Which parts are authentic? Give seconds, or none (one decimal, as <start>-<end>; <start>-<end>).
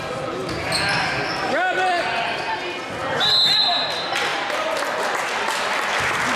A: 0.0-6.4